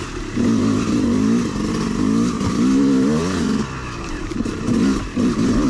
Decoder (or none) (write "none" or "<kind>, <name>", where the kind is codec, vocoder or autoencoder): none